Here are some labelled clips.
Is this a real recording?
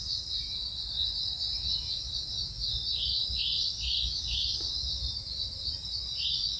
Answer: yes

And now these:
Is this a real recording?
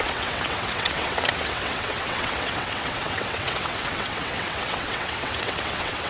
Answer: no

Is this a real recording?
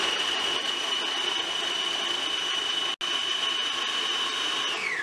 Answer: yes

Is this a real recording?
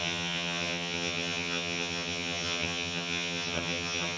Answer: no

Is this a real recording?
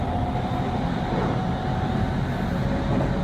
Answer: yes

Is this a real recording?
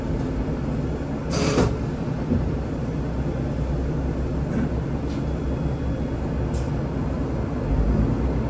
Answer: yes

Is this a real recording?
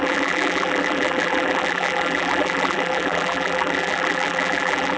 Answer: no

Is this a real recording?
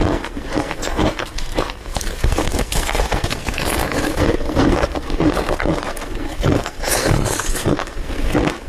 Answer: no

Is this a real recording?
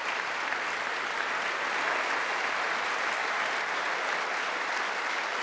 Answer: yes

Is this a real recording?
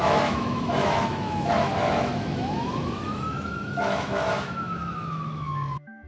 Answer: no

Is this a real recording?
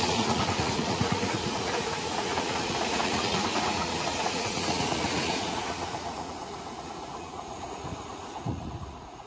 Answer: no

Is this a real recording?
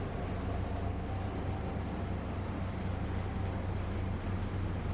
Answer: yes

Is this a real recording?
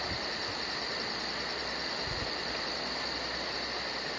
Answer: yes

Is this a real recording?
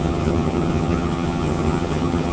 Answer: no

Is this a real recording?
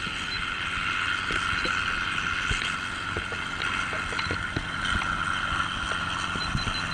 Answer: yes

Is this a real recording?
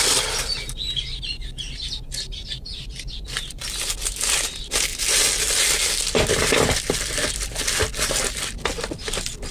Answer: yes